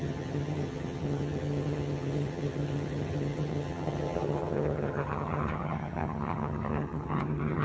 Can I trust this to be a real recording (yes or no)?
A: no